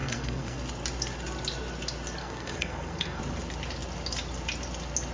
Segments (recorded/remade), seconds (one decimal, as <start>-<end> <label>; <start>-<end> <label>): 0.0-0.6 remade; 0.6-2.2 recorded; 2.2-3.2 remade; 3.2-5.1 recorded